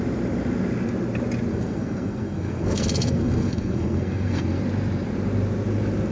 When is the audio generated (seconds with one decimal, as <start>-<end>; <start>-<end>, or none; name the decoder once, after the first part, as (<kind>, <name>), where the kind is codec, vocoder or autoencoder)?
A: 1.5-4.6 (codec, SNAC)